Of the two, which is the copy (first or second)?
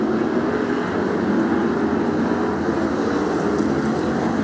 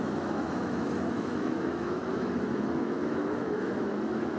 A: second